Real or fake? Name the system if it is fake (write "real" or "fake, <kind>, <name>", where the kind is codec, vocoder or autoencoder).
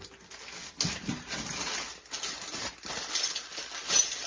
real